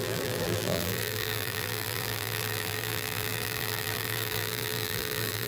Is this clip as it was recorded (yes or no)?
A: no